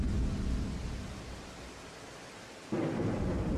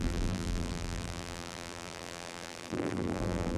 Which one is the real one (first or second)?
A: first